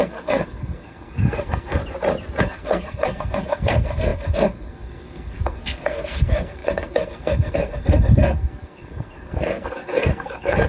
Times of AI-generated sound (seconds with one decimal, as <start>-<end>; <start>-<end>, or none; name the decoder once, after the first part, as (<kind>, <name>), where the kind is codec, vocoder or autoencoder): 0.0-1.8 (codec, SNAC); 2.4-10.7